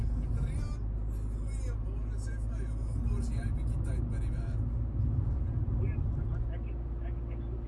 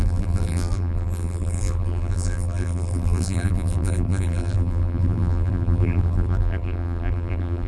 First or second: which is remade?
second